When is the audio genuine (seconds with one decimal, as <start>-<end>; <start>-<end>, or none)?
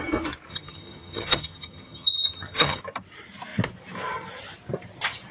0.0-0.5; 2.8-5.3